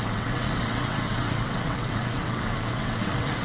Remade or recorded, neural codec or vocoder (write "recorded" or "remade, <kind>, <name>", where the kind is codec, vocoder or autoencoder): remade, vocoder, WaveNeXt